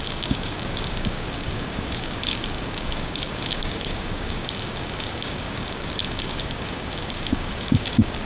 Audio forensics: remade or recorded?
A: remade